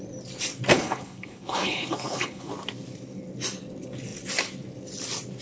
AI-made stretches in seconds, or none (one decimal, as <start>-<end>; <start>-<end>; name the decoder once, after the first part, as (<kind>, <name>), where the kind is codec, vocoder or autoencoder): 0.7-2.5 (codec, HILCodec)